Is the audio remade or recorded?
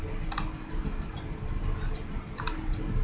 recorded